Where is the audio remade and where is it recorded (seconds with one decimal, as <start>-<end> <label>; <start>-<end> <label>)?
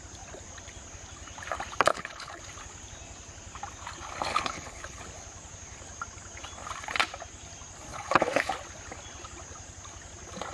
0.0-1.9 recorded; 1.9-2.4 remade; 2.4-4.3 recorded; 4.3-5.0 remade; 5.0-7.9 recorded; 7.9-8.5 remade; 8.5-10.5 recorded